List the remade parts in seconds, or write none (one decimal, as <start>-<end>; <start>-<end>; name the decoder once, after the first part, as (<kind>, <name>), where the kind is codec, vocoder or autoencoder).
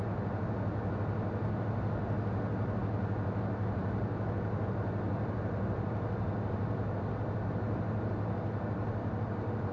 none